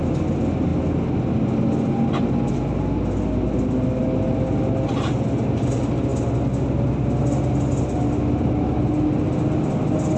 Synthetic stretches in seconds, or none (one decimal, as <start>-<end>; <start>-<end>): none